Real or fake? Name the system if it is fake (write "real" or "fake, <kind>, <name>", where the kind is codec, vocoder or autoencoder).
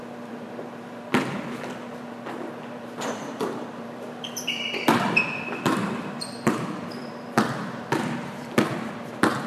fake, vocoder, BigVGAN v2